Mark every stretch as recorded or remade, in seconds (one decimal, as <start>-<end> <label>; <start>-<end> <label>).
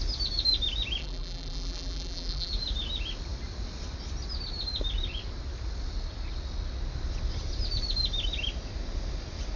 0.0-1.0 recorded; 1.0-2.5 remade; 2.5-9.6 recorded